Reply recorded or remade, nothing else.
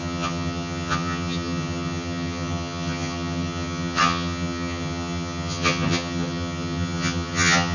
remade